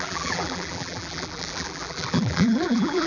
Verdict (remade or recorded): remade